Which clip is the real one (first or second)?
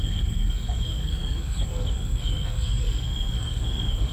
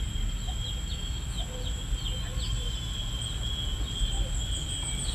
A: second